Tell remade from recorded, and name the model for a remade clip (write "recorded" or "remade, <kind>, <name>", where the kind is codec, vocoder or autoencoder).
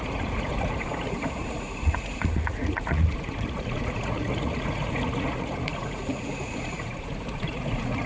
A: remade, vocoder, Vocos